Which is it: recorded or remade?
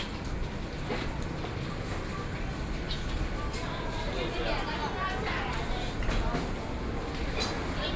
recorded